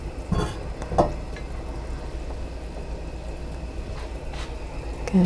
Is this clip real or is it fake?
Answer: real